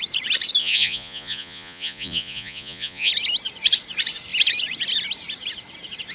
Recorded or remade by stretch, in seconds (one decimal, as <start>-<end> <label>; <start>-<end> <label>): 0.0-0.6 recorded; 0.6-3.1 remade; 3.1-6.1 recorded